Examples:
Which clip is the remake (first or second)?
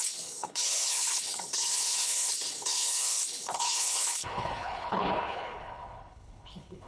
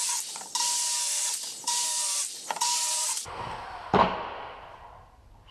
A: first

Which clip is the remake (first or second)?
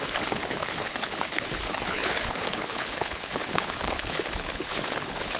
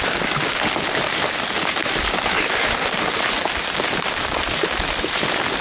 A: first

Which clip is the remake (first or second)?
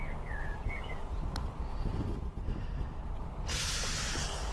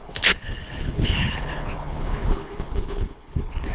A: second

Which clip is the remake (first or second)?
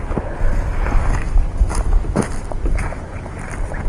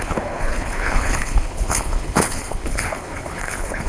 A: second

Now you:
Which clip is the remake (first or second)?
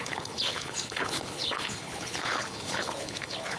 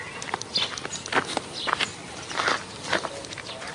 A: first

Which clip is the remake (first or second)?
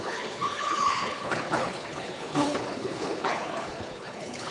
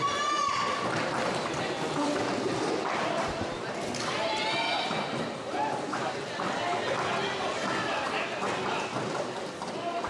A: first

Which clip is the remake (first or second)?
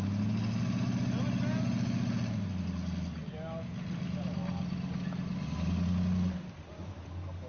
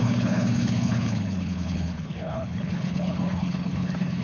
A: second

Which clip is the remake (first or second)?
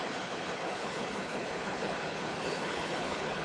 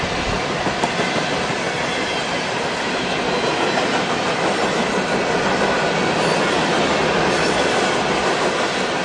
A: first